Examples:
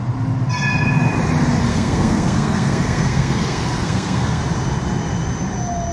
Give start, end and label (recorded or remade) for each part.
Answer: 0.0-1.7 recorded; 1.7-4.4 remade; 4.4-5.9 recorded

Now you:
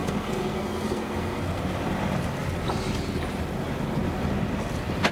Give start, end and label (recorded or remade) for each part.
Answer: 0.0-1.6 remade; 1.6-5.1 recorded

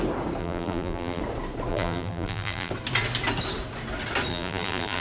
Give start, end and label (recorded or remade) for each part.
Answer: 0.0-0.4 recorded; 0.4-1.2 remade; 1.2-1.7 recorded; 1.7-2.7 remade; 2.7-4.3 recorded; 4.3-5.0 remade

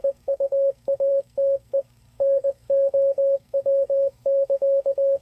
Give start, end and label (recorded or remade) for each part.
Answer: 0.0-5.2 remade

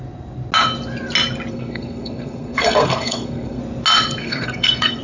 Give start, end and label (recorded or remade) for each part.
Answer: 0.0-1.5 recorded; 1.5-3.6 remade; 3.6-4.2 recorded; 4.2-5.0 remade

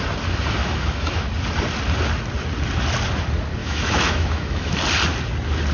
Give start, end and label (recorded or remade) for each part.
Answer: 0.0-0.6 recorded; 0.6-1.3 remade; 1.3-3.6 recorded; 3.6-4.7 remade; 4.7-5.7 recorded

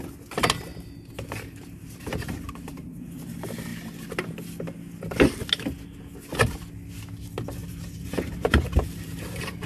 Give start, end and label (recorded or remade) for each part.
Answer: 0.0-0.7 recorded; 0.7-3.2 remade; 3.2-7.6 recorded; 7.6-9.7 remade

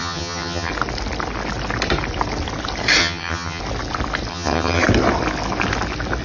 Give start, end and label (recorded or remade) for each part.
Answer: 0.0-0.7 remade; 0.7-3.0 recorded; 3.0-3.6 remade; 3.6-4.3 recorded; 4.3-4.8 remade; 4.8-6.2 recorded